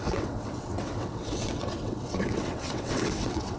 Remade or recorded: remade